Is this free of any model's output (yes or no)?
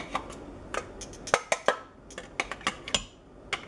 yes